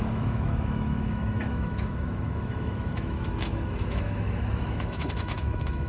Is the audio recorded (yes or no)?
no